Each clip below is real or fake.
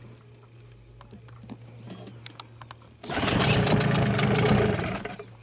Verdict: real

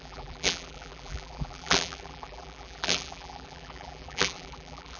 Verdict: fake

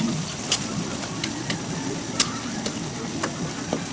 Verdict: fake